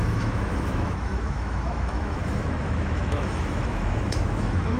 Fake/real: fake